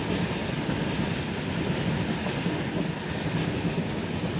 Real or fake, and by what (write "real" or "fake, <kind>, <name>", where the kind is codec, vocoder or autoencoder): real